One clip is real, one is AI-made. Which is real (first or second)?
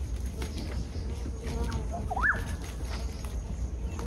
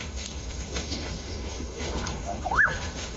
first